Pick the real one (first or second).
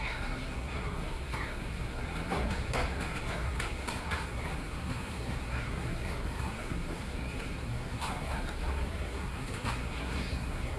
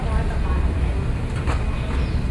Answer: second